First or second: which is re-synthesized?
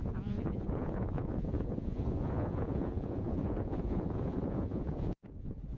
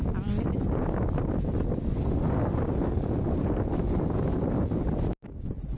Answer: first